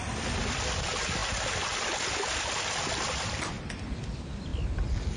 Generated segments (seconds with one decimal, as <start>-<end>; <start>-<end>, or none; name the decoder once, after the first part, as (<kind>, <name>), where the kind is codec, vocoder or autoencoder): none